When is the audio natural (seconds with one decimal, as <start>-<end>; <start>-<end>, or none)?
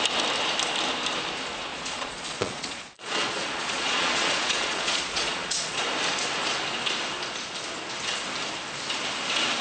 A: 0.0-1.7; 5.8-9.6